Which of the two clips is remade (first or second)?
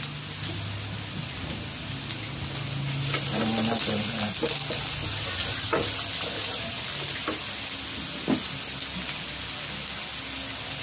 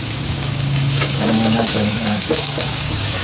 second